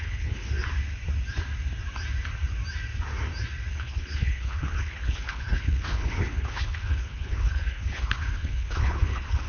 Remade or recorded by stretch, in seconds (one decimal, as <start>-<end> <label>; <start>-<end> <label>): 0.0-0.5 remade; 0.5-3.7 recorded; 3.7-9.5 remade